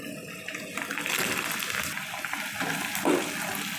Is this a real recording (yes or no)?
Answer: yes